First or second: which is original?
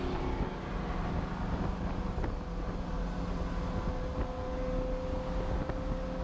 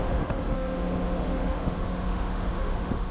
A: first